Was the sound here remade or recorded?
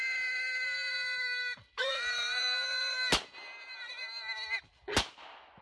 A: recorded